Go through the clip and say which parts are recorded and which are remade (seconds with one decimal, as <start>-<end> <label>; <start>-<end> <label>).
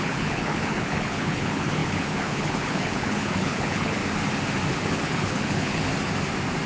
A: 0.0-4.0 remade; 4.0-4.7 recorded; 4.7-5.9 remade; 5.9-6.7 recorded